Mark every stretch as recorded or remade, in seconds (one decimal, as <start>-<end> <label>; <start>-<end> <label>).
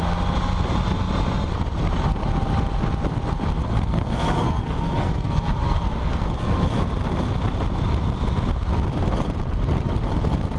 0.0-3.6 recorded; 3.6-6.8 remade; 6.8-10.6 recorded